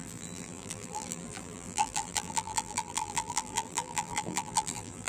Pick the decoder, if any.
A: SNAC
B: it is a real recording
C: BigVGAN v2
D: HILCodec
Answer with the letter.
C